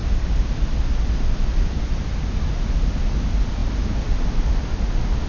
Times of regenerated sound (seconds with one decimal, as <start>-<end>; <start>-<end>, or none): none